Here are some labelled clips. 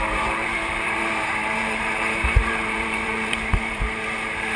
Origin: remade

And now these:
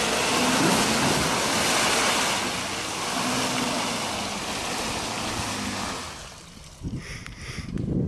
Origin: recorded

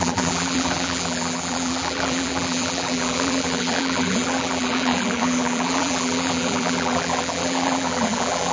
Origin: remade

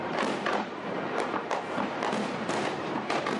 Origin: remade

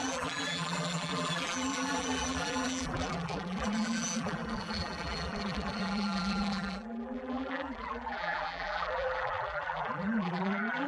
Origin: remade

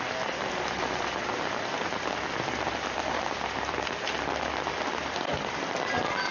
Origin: remade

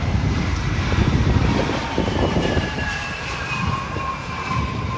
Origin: remade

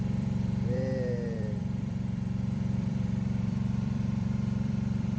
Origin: remade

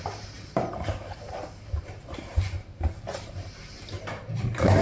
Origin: remade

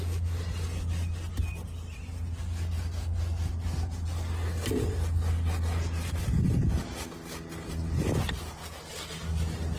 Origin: recorded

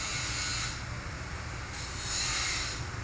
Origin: recorded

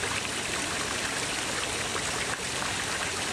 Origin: remade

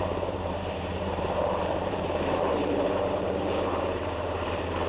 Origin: remade